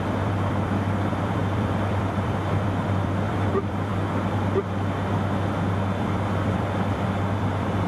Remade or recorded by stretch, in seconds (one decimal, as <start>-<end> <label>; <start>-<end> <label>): 0.0-3.9 remade; 3.9-6.0 recorded; 6.0-7.9 remade